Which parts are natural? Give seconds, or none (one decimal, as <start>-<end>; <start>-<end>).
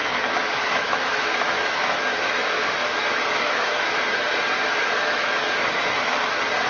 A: 4.0-4.8; 6.3-6.7